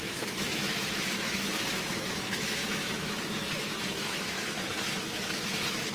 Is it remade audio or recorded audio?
remade